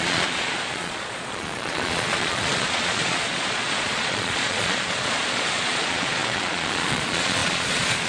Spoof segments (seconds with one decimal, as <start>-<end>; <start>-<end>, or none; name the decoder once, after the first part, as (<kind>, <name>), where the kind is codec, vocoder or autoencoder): 0.0-8.1 (vocoder, Vocos)